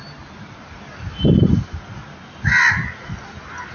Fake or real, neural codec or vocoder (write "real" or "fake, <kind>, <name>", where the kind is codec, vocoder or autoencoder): real